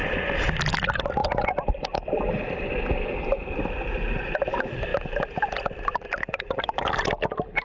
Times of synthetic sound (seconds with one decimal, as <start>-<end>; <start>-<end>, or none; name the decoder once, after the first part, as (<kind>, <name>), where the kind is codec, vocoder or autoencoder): none